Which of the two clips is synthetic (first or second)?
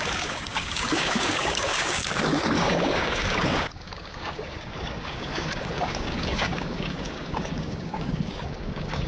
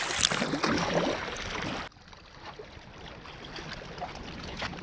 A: first